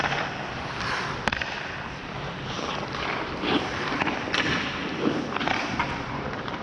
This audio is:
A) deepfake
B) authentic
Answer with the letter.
A